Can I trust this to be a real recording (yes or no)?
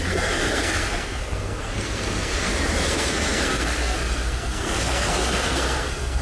no